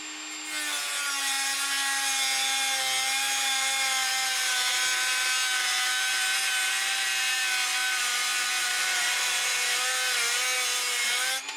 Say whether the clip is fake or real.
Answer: real